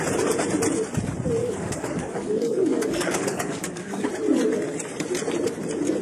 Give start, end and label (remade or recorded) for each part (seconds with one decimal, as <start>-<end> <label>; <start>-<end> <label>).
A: 0.0-1.4 recorded; 1.4-4.1 remade; 4.1-6.0 recorded